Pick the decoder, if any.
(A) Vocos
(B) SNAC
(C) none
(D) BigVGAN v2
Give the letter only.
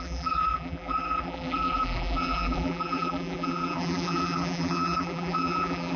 D